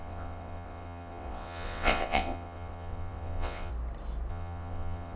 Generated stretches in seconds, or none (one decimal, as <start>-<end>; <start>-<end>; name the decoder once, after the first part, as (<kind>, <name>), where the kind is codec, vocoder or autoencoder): 0.0-3.7 (vocoder, WaveNeXt); 4.3-5.2